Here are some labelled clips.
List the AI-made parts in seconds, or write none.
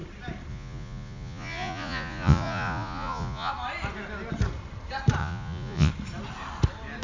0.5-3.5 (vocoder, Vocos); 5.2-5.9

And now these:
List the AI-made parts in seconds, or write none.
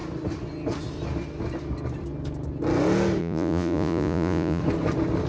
3.2-4.6 (vocoder, Vocos)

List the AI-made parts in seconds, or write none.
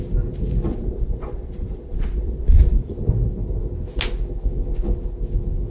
0.7-3.1 (vocoder, Vocos)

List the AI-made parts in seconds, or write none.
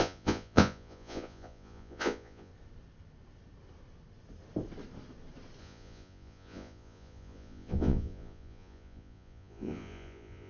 0.0-2.5 (vocoder, Vocos); 5.6-10.5